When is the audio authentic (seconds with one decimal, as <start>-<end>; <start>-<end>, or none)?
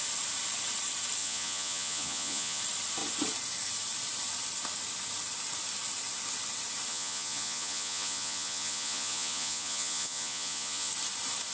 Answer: 0.0-1.2; 2.6-6.9; 10.9-11.5